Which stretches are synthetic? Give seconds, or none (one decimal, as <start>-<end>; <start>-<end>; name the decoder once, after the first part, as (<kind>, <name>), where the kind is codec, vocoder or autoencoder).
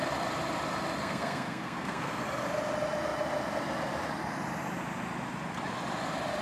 1.0-2.2 (codec, SNAC)